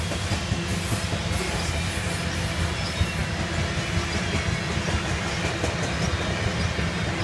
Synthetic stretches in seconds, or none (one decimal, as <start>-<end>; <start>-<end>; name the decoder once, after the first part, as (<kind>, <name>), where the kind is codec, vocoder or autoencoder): none